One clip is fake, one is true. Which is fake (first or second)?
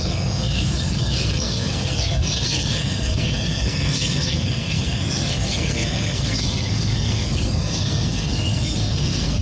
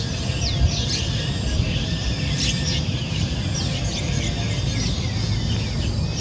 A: first